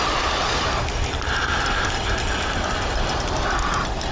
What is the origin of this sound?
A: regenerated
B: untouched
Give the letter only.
B